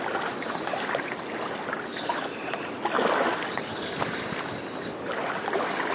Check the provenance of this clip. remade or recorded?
recorded